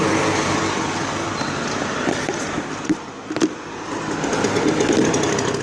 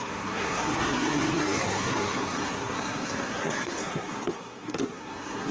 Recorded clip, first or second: first